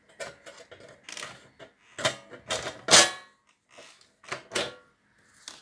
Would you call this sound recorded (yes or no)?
yes